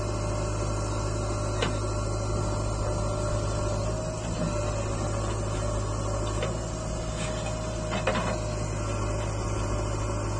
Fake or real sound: real